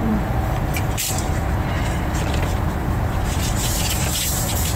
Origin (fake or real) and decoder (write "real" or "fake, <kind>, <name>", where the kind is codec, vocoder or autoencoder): fake, vocoder, BigVGAN v2